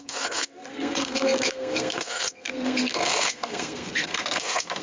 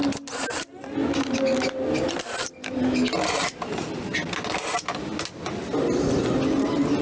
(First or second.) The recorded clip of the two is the second